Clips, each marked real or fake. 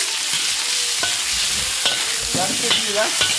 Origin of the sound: real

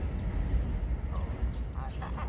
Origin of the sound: real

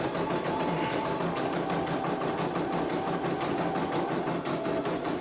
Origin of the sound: real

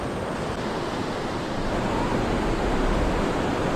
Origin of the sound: real